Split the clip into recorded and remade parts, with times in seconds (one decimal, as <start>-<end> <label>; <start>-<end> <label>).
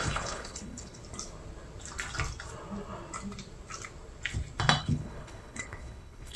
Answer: 0.0-1.0 remade; 1.0-4.8 recorded; 4.8-6.4 remade